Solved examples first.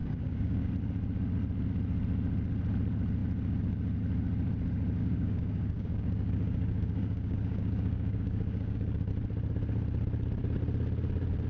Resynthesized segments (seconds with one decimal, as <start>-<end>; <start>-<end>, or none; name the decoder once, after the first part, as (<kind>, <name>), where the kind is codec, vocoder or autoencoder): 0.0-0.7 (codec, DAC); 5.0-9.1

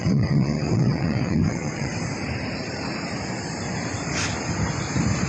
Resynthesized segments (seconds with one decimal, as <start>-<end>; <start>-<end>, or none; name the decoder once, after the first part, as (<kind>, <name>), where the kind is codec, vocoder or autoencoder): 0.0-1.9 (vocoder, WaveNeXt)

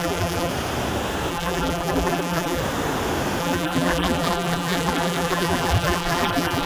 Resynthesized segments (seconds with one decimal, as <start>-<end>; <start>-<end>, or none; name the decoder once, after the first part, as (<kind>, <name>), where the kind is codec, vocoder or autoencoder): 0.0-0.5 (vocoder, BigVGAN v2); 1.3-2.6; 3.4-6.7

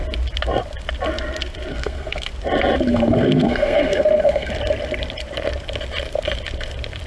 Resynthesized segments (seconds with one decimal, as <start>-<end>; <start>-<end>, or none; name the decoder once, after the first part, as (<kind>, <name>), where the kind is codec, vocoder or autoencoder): 1.7-2.3 (codec, SNAC); 2.9-4.5

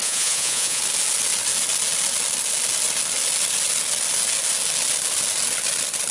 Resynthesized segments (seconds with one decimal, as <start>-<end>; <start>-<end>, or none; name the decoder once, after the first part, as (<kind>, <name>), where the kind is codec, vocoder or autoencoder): 0.0-0.8 (vocoder, Vocos)

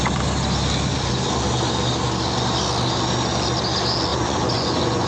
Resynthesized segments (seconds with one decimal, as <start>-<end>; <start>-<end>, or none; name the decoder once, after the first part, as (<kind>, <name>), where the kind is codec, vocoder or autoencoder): 4.1-5.1 (vocoder, Vocos)

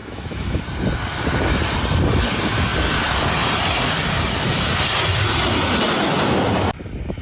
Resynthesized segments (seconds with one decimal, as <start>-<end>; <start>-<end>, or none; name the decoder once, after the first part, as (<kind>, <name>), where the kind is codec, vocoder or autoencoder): 0.0-0.6 (autoencoder, DAC-VAE)